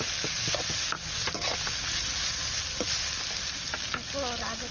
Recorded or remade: recorded